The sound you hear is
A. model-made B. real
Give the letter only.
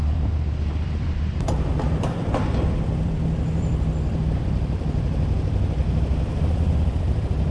A